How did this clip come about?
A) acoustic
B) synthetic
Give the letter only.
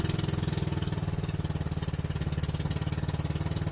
A